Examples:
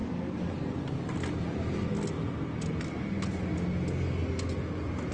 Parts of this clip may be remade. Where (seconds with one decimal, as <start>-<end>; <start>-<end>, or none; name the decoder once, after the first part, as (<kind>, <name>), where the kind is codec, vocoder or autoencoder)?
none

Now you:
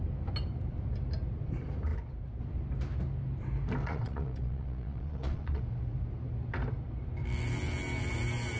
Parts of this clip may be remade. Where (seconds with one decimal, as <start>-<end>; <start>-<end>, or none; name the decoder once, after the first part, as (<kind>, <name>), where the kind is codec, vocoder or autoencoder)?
3.8-5.6 (vocoder, Vocos)

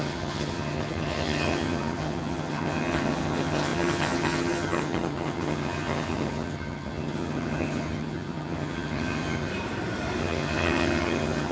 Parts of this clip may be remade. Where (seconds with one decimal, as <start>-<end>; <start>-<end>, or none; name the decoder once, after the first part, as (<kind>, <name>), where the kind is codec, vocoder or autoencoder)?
0.0-9.5 (vocoder, HiFi-GAN); 10.2-11.5

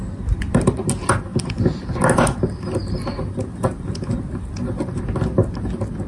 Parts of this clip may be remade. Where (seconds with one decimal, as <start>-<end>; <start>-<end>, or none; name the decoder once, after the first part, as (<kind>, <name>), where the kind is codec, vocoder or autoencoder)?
none

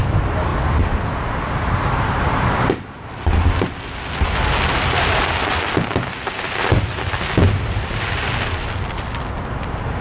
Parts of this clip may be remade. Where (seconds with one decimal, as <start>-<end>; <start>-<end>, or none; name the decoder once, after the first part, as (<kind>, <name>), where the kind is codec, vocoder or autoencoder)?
none

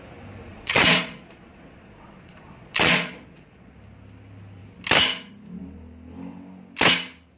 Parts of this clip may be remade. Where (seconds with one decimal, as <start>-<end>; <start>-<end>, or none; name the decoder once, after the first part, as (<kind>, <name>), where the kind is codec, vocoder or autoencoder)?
0.4-3.7 (vocoder, Vocos)